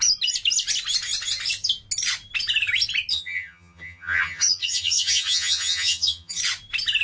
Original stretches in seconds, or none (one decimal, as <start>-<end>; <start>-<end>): 0.0-3.1; 6.4-7.0